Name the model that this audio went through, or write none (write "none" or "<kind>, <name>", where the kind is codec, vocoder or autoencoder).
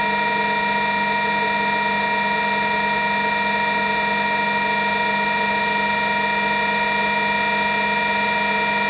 none